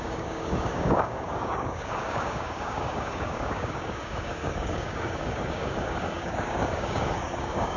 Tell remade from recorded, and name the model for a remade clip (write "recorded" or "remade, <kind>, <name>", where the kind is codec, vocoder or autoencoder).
remade, codec, DAC